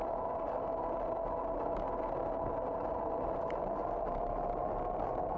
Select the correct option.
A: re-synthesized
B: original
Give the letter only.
B